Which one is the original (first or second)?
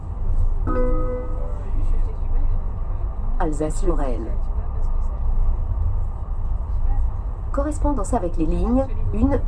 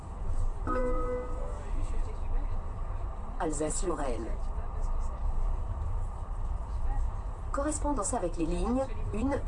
first